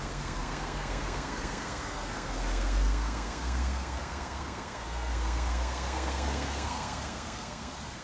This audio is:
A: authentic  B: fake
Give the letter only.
B